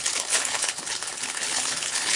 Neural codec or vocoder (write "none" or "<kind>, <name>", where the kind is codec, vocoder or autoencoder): codec, HILCodec